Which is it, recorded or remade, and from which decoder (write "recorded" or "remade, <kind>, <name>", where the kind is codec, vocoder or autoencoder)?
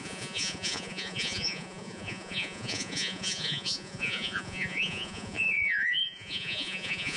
remade, vocoder, Vocos